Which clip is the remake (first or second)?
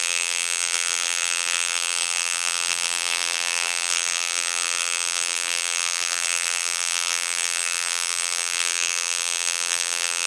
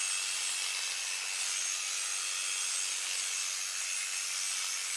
first